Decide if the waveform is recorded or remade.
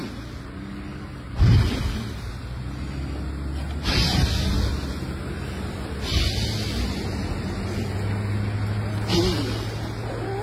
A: recorded